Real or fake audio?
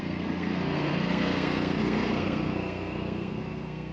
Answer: fake